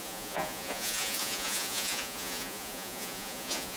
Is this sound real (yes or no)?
no